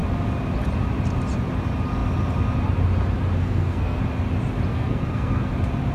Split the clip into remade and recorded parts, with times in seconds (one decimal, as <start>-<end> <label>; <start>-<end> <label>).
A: 0.0-3.4 recorded; 3.4-4.0 remade; 4.0-4.7 recorded; 4.7-5.5 remade; 5.5-5.9 recorded

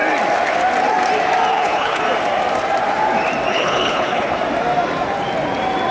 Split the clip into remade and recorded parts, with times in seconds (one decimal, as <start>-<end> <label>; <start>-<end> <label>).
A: 0.0-1.5 recorded; 1.5-2.0 remade; 2.0-3.5 recorded; 3.5-4.4 remade; 4.4-5.9 recorded

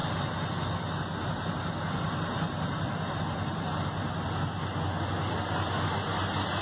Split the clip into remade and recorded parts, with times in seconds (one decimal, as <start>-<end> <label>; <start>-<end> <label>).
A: 0.0-6.6 recorded

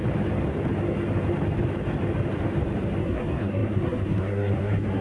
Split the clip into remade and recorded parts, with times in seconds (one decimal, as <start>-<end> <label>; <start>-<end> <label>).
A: 0.0-3.0 recorded; 3.0-5.0 remade

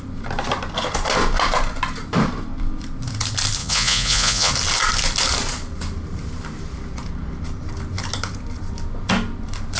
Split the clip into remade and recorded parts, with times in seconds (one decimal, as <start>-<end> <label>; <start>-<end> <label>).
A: 0.0-3.6 recorded; 3.6-4.5 remade; 4.5-9.8 recorded